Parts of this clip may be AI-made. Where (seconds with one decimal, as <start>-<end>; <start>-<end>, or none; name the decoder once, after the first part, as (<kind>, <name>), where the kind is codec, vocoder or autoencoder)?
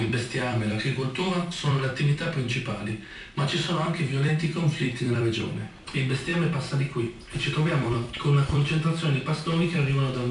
0.0-6.3 (vocoder, BigVGAN v2); 7.0-10.3